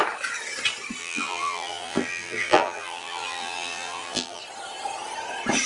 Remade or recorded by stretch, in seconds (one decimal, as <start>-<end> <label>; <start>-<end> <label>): 0.0-1.0 recorded; 1.0-4.4 remade; 4.4-5.7 recorded